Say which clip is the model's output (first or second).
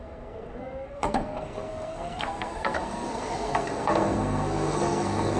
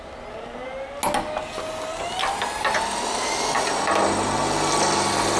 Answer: first